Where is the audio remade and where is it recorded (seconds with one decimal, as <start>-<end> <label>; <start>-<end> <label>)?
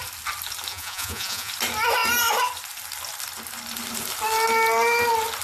0.0-0.7 recorded; 0.7-1.5 remade; 1.5-5.4 recorded